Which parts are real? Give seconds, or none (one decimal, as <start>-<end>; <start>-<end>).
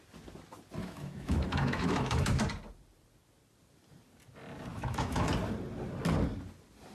0.0-0.8; 2.4-4.7; 5.3-6.9